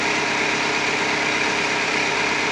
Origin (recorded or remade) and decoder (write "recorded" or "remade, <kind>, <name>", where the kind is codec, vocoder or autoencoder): recorded